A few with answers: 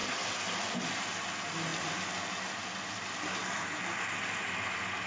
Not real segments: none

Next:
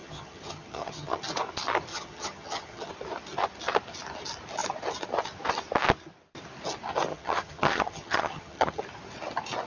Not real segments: 0.0-1.2; 1.9-2.9; 7.1-8.8

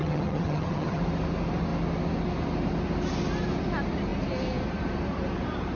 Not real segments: 0.0-1.0

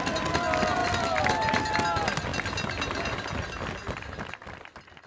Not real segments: none

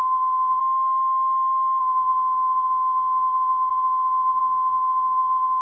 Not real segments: 0.0-0.6; 1.8-5.6